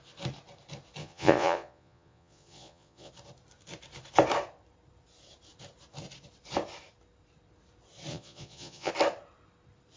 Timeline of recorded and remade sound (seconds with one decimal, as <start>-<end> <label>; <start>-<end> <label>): 0.0-1.0 recorded; 1.0-3.1 remade; 3.1-8.1 recorded; 8.1-8.9 remade; 8.9-10.0 recorded